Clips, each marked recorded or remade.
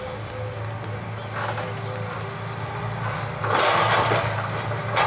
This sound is recorded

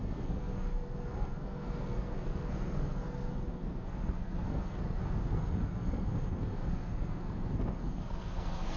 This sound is remade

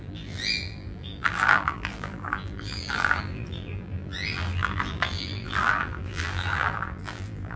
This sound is remade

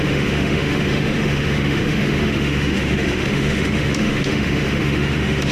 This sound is remade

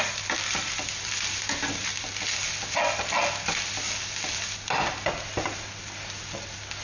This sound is recorded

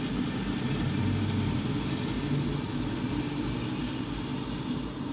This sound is recorded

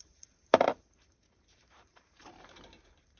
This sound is remade